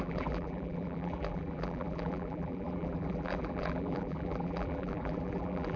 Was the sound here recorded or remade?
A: remade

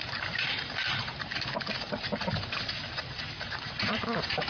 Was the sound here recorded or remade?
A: remade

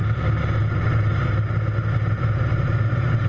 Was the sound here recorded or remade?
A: recorded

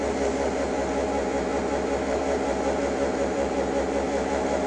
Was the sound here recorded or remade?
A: remade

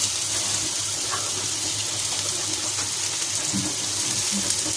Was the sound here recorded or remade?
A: remade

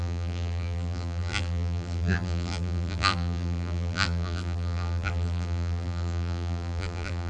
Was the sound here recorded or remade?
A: remade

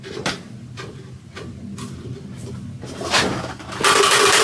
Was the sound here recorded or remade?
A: recorded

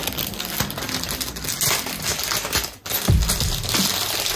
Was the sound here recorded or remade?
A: recorded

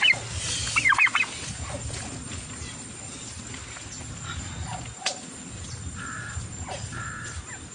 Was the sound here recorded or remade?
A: recorded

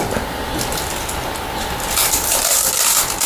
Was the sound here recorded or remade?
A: remade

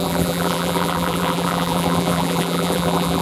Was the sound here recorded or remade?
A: remade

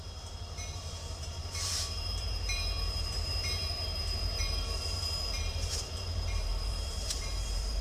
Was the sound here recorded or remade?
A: remade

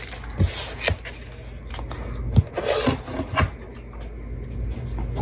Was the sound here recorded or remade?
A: recorded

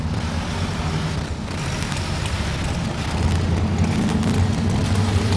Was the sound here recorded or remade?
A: recorded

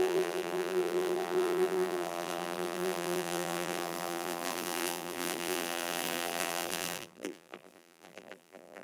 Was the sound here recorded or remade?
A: remade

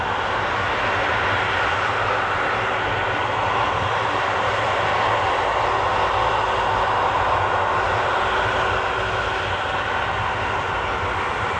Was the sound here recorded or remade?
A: recorded